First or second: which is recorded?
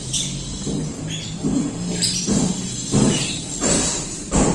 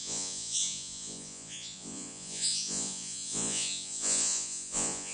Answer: first